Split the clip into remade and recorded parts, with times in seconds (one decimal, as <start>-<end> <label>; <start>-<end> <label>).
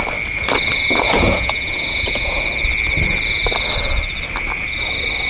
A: 0.0-0.7 recorded; 0.7-2.4 remade; 2.4-5.3 recorded